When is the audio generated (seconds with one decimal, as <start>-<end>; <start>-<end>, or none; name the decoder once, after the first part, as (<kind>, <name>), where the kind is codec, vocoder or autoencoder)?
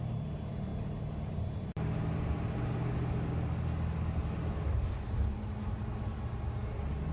none